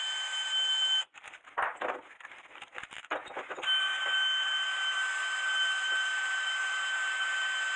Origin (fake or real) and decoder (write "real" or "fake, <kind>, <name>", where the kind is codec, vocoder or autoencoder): real